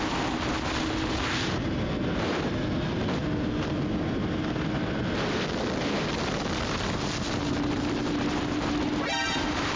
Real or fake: real